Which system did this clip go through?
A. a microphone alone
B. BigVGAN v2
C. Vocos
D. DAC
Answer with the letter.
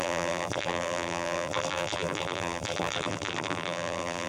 B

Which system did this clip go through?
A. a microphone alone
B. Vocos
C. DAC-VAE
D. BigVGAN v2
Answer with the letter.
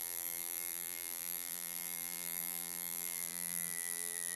D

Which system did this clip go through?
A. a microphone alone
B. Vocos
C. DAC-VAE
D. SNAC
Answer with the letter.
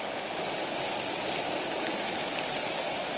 A